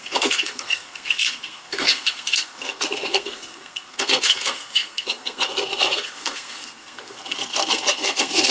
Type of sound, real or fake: fake